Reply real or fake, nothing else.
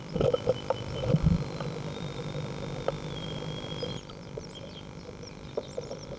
real